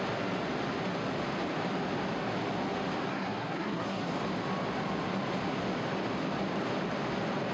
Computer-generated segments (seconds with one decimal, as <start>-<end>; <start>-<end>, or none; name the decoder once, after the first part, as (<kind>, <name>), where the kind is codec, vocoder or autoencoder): 3.1-4.1 (codec, SNAC)